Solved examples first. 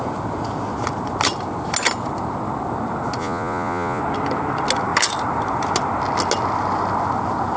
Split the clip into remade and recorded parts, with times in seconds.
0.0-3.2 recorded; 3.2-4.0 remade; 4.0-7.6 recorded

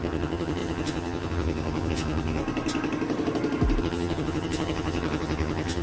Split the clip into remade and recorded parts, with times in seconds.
0.0-2.4 remade; 2.4-3.8 recorded; 3.8-5.8 remade

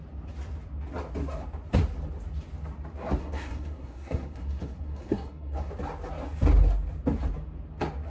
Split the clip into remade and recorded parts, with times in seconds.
0.0-3.2 recorded; 3.2-5.7 remade; 5.7-8.1 recorded

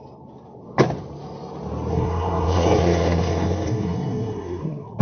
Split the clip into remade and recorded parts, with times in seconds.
0.0-1.9 recorded; 1.9-5.0 remade

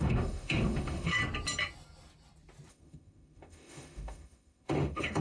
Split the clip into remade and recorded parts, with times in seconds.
0.0-1.2 remade; 1.2-2.7 recorded; 2.7-5.2 remade

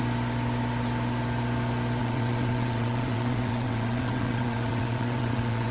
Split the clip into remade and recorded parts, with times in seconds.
0.0-2.0 recorded; 2.0-5.7 remade